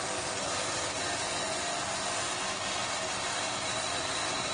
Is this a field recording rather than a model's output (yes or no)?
yes